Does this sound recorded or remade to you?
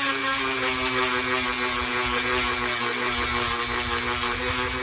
recorded